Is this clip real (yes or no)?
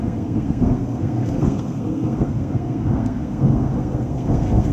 no